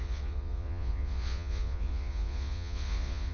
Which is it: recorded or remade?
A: remade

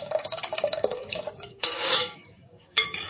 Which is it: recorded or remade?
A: remade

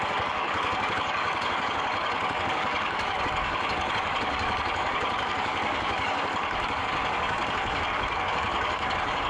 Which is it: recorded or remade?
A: remade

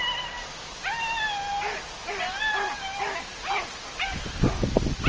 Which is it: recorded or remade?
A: recorded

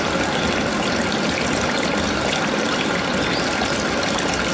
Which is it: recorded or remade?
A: recorded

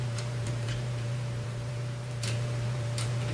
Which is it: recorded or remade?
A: remade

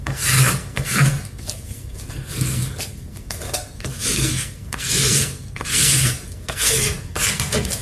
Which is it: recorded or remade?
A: remade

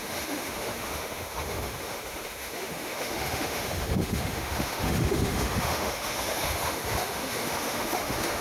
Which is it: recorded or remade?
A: remade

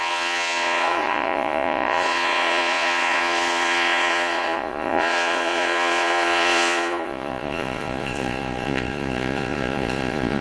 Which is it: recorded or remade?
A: remade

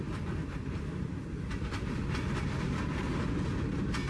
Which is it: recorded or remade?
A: remade